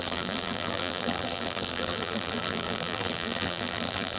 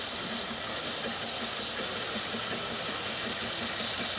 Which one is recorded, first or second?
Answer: second